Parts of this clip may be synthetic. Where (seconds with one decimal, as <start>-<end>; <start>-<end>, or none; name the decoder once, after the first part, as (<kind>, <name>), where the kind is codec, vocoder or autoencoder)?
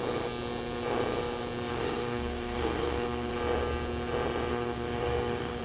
1.7-3.3 (codec, SNAC); 4.5-5.6